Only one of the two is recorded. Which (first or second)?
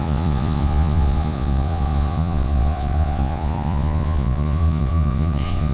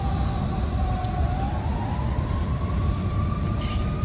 second